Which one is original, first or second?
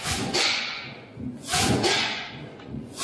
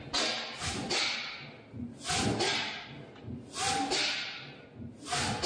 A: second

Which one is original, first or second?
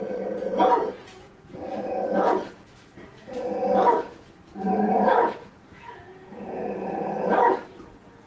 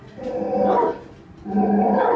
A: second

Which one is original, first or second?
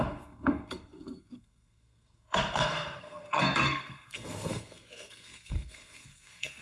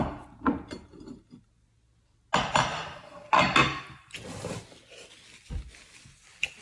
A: second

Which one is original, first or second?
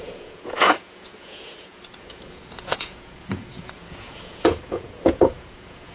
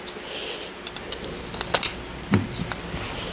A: second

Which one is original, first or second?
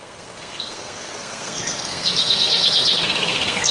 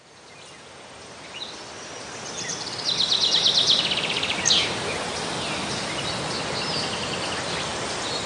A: second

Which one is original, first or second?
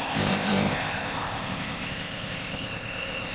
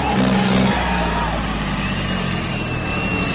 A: second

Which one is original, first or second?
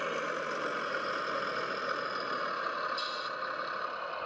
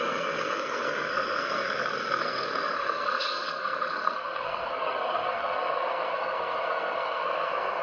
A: first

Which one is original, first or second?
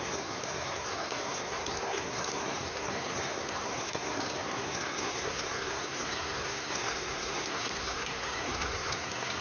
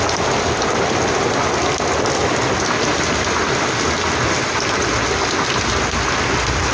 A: second